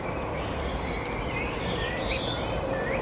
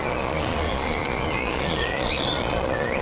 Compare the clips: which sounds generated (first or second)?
second